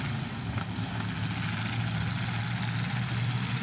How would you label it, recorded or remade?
recorded